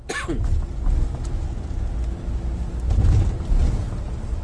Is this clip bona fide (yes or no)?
yes